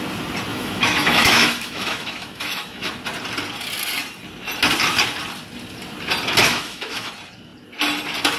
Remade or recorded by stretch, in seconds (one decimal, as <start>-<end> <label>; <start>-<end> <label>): 0.0-0.5 recorded; 0.5-2.9 remade; 2.9-6.4 recorded; 6.4-7.1 remade; 7.1-8.4 recorded